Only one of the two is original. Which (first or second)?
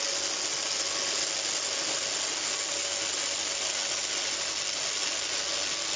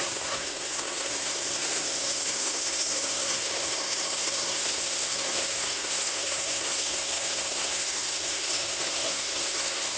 first